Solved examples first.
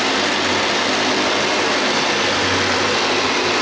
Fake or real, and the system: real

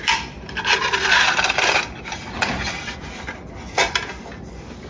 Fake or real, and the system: real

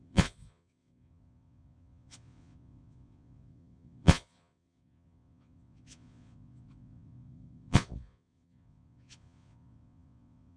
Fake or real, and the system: fake, vocoder, Vocos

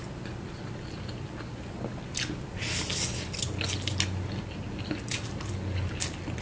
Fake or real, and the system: real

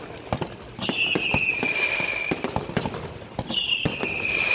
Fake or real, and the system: real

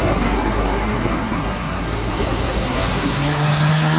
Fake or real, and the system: fake, codec, SNAC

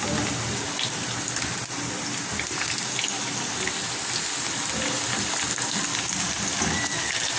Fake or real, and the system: real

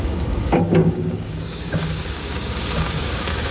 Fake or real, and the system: fake, codec, DAC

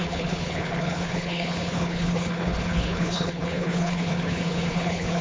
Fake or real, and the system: fake, codec, HILCodec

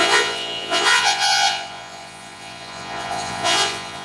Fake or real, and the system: fake, vocoder, Vocos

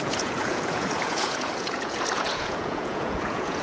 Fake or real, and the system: fake, vocoder, Vocos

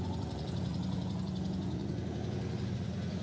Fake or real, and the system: fake, vocoder, Vocos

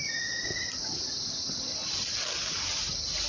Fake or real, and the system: real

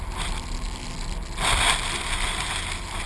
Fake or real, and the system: real